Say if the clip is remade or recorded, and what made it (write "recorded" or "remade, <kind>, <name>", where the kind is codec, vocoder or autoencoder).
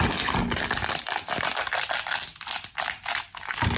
recorded